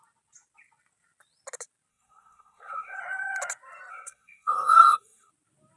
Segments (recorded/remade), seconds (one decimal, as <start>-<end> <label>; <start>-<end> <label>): 0.0-1.9 recorded; 1.9-3.0 remade; 3.0-3.9 recorded; 3.9-5.3 remade; 5.3-5.8 recorded